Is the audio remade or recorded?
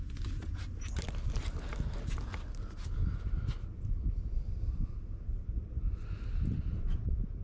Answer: recorded